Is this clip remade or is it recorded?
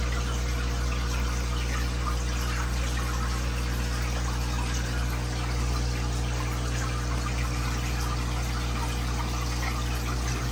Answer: recorded